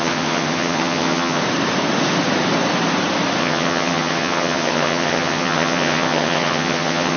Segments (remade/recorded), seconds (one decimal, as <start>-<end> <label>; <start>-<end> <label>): 0.0-1.4 remade; 1.4-3.4 recorded; 3.4-7.2 remade